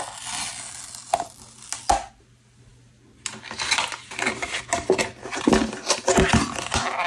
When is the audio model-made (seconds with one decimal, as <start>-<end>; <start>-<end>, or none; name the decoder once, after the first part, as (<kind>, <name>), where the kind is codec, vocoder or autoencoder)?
none